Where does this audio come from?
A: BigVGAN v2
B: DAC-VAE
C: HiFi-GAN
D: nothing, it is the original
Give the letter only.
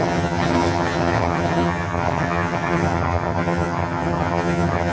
C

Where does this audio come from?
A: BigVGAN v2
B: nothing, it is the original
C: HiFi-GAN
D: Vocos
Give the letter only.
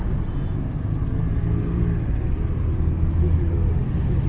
B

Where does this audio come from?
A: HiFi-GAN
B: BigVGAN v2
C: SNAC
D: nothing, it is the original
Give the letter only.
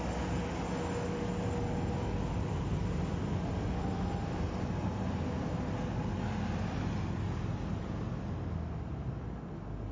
D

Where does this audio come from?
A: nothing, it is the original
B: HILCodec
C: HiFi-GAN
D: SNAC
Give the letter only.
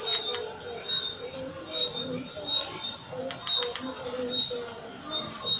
A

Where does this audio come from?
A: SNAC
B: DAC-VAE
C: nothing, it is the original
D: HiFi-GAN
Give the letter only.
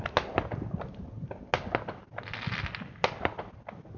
C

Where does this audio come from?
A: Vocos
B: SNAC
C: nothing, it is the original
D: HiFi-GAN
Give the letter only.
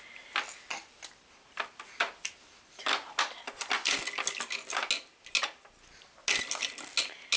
C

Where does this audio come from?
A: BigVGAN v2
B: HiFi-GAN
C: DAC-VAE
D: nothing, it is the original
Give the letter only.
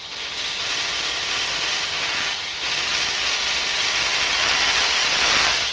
B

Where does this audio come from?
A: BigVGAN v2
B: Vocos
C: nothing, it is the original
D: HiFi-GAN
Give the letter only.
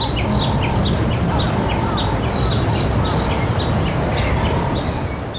C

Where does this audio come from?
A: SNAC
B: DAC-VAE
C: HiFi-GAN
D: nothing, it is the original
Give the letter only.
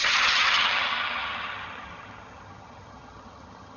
C